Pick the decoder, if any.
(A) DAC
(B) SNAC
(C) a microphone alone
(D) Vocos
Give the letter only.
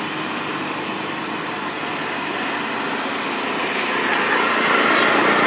C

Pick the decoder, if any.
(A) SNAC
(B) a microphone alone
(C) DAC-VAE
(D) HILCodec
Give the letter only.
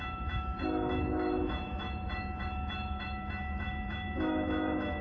C